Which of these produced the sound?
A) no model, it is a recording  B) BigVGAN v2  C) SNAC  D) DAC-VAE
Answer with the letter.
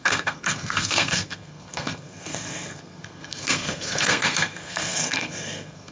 C